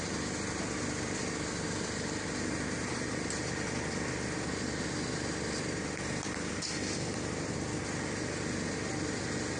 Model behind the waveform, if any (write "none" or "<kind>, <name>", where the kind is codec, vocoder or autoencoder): none